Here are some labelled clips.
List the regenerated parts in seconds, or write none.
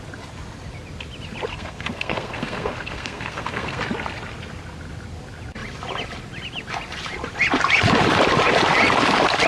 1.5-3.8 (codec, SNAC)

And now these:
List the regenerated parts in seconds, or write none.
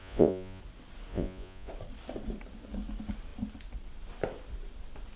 0.0-0.6 (vocoder, Vocos); 1.1-1.7